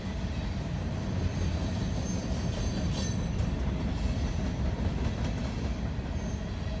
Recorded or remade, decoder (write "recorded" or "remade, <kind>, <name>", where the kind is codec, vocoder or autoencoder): recorded